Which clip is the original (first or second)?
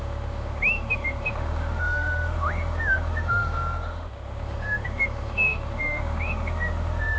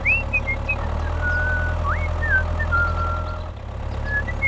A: second